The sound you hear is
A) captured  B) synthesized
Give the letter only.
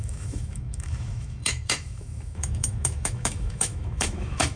B